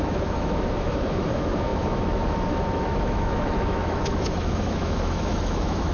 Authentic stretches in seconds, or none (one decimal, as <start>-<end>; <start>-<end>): none

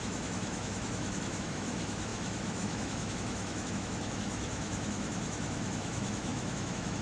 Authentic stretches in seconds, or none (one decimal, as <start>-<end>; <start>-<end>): none

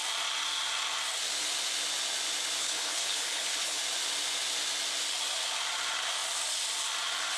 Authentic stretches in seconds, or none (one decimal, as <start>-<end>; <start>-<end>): 0.0-2.6; 3.8-7.4